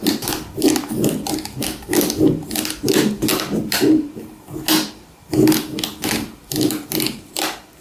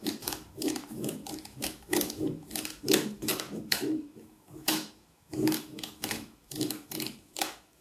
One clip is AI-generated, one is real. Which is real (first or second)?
first